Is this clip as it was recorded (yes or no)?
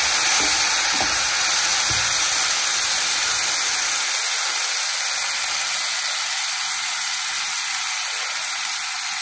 yes